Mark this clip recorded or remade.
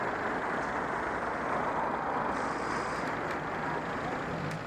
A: recorded